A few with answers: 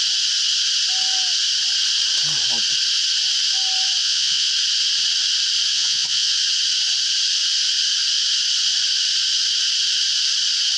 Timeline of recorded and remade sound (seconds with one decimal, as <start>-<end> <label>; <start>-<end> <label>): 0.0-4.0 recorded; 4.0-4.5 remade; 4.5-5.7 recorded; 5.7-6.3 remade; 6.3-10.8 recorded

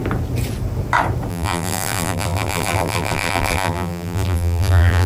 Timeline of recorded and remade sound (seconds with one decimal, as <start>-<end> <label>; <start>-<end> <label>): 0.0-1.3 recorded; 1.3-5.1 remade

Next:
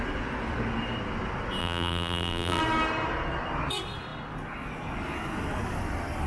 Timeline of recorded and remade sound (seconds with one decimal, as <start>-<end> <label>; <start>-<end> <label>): 0.0-1.6 recorded; 1.6-2.6 remade; 2.6-6.3 recorded

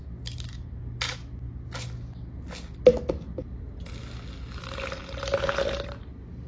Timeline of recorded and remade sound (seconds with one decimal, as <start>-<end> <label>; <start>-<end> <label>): 0.0-6.5 recorded

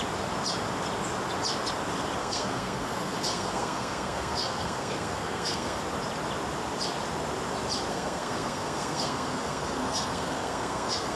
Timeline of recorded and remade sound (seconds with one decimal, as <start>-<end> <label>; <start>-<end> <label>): 0.0-2.2 recorded; 2.2-5.8 remade; 5.8-7.9 recorded; 7.9-11.2 remade